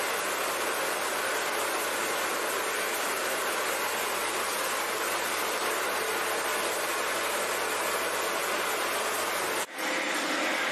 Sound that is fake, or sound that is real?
real